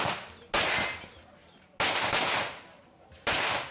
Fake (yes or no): no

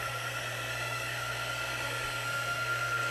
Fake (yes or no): yes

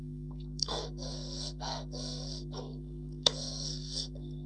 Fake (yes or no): yes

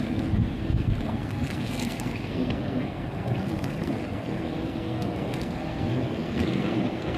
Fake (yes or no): yes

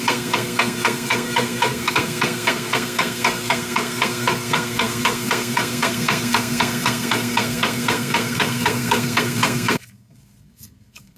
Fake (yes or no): yes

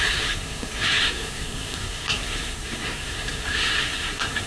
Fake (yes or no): yes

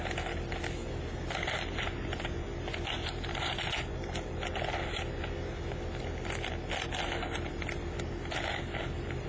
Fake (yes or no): no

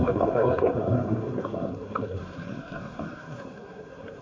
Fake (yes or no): yes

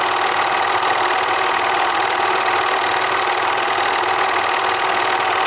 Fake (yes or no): no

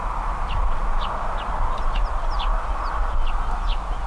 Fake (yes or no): no